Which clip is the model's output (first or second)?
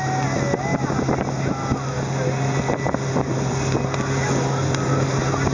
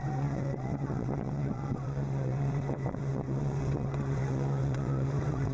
second